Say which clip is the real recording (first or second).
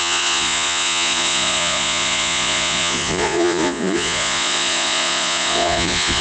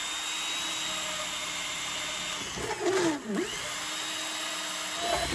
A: second